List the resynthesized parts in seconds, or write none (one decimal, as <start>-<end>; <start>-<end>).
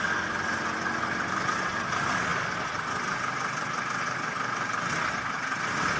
none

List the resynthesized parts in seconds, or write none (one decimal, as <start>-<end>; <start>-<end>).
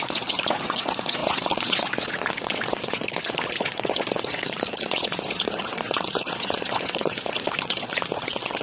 0.0-8.6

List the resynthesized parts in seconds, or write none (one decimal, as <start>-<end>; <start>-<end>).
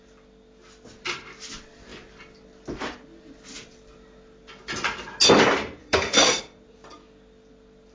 5.8-6.4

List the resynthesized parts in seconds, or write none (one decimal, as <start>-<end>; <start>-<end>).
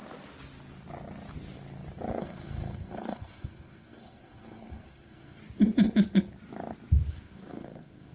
2.2-5.4; 7.1-8.1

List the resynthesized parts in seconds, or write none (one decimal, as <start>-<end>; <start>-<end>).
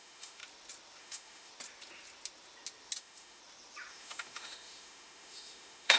0.0-0.4; 1.0-1.5; 3.0-3.4; 3.9-6.0